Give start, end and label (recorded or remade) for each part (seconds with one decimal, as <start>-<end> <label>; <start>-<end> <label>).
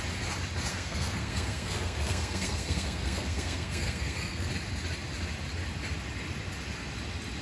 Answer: 0.0-0.7 recorded; 0.7-4.5 remade; 4.5-7.4 recorded